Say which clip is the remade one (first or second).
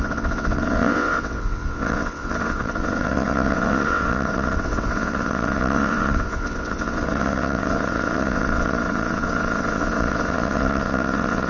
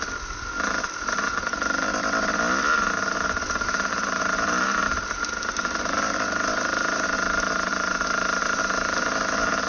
first